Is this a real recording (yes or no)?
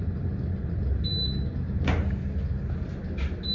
yes